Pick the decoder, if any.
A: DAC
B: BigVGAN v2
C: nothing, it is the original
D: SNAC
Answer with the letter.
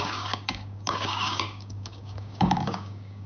A